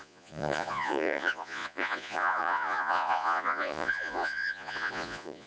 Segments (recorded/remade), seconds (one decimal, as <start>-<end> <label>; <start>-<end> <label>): 0.0-5.5 remade